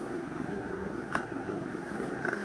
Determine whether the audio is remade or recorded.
remade